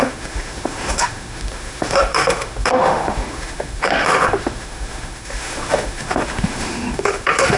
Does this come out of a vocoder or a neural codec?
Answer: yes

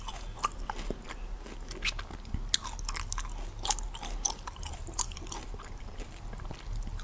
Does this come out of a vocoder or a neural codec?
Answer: no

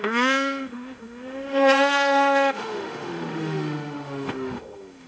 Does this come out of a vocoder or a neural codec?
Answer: yes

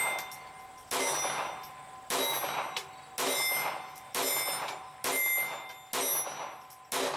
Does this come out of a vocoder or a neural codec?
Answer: no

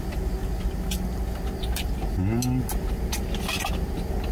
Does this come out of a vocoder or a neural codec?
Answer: no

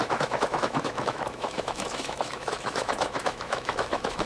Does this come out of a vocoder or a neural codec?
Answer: yes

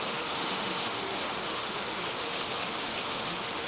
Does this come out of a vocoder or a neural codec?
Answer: yes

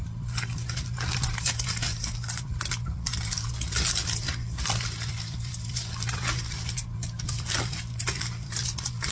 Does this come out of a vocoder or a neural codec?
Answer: no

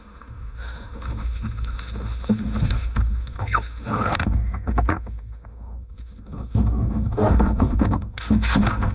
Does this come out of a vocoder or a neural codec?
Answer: yes